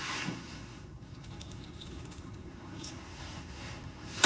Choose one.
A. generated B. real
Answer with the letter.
A